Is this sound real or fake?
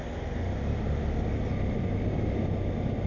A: real